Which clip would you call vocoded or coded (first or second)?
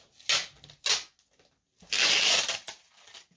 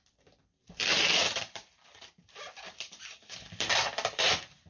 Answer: second